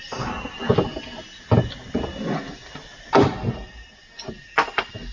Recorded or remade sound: recorded